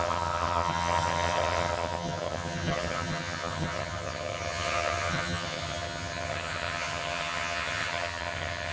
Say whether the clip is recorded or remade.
remade